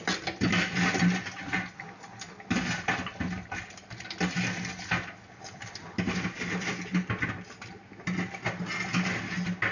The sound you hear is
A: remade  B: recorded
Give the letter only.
B